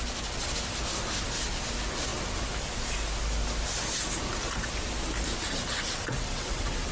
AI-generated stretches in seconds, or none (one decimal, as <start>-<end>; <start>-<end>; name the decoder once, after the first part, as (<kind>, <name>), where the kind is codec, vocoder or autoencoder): 6.0-6.9 (vocoder, WaveNeXt)